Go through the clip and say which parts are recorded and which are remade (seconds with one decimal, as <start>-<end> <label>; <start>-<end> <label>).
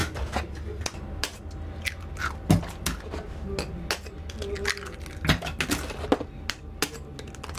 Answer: 0.0-7.6 recorded